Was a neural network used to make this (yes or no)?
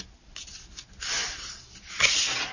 no